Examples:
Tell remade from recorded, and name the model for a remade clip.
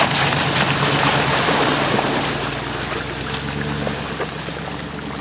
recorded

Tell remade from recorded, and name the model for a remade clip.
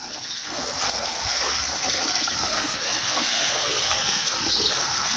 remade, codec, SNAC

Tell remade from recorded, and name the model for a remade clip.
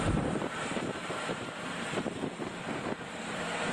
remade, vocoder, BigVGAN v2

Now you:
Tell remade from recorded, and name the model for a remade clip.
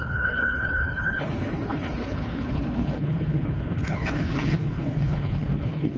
remade, codec, HILCodec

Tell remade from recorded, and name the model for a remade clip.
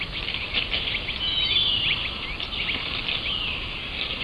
recorded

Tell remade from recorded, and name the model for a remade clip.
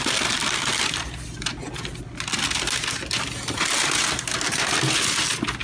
recorded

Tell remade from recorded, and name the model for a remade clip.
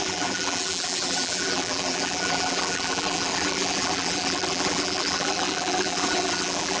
remade, vocoder, BigVGAN v2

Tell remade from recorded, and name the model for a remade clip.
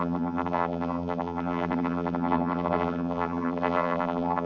remade, vocoder, BigVGAN v2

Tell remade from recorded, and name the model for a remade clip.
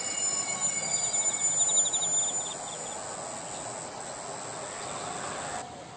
recorded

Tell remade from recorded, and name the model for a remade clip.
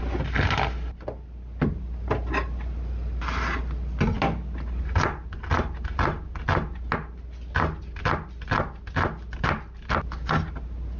recorded